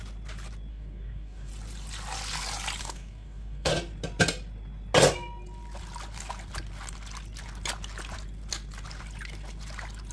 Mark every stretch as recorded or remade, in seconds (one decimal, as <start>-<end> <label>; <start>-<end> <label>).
0.0-0.7 recorded; 0.7-1.5 remade; 1.5-2.8 recorded; 2.8-3.7 remade; 3.7-10.1 recorded